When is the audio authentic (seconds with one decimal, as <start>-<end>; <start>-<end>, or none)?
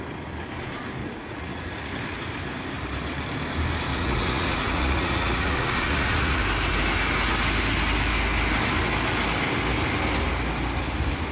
0.0-1.0; 1.9-3.9; 6.4-11.3